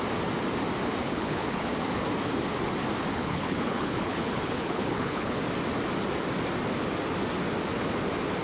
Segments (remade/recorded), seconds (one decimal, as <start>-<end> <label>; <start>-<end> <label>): 0.0-1.0 recorded; 1.0-1.7 remade; 1.7-3.1 recorded; 3.1-5.4 remade; 5.4-8.4 recorded